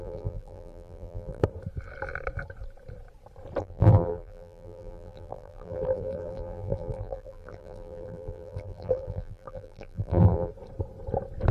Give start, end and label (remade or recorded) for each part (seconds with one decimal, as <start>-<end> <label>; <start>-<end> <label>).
0.0-1.4 remade; 1.4-3.6 recorded; 3.6-10.5 remade; 10.5-11.5 recorded